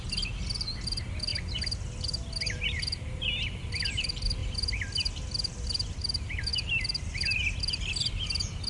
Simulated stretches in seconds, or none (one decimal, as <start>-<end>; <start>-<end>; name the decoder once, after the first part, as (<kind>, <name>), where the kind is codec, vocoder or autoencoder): 0.0-1.3 (vocoder, BigVGAN v2); 2.0-4.4; 5.5-8.7